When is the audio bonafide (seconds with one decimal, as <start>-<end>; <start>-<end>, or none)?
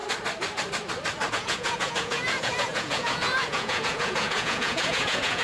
0.0-1.3